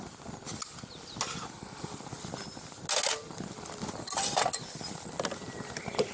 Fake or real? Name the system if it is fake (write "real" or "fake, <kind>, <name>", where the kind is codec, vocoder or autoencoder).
real